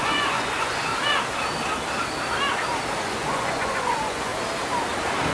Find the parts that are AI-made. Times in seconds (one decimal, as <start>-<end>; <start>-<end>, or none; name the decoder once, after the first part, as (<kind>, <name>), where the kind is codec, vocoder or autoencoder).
0.0-0.9 (vocoder, Vocos); 3.0-4.3